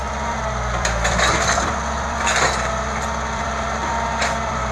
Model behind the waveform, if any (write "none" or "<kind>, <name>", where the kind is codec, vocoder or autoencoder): vocoder, BigVGAN v2